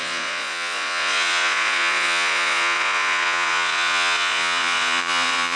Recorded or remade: remade